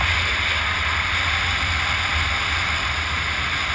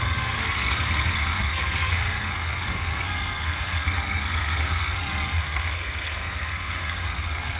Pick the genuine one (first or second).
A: first